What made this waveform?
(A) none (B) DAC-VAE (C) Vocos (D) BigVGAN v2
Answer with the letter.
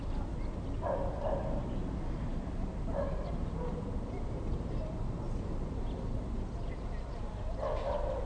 A